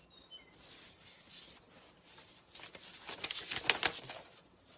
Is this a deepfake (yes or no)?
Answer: no